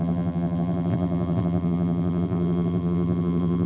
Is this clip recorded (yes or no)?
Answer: no